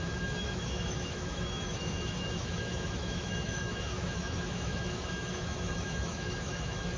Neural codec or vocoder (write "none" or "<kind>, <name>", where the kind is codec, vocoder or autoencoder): autoencoder, DAC-VAE